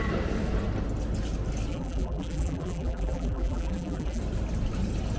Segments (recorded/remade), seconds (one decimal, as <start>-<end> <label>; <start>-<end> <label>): 0.0-1.7 recorded; 1.7-4.2 remade; 4.2-5.2 recorded